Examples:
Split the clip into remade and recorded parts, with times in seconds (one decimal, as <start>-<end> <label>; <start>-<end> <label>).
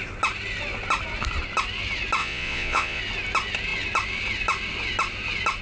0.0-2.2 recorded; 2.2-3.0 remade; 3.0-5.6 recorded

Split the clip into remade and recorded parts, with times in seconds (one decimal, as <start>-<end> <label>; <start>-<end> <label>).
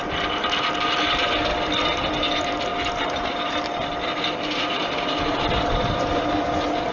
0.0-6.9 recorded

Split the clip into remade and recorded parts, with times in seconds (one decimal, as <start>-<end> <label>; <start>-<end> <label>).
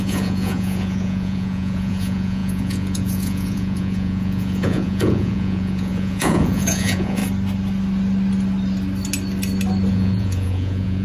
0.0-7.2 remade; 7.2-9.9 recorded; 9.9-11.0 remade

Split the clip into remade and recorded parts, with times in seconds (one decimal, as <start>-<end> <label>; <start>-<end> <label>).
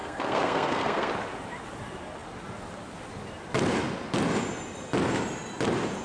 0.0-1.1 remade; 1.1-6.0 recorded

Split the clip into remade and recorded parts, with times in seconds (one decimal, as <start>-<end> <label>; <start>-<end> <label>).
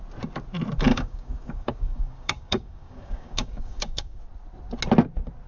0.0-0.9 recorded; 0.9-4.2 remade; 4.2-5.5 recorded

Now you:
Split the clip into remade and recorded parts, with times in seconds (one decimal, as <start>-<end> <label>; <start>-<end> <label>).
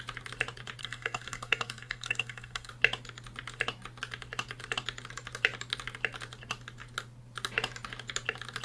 0.0-0.8 recorded; 0.8-2.7 remade; 2.7-8.6 recorded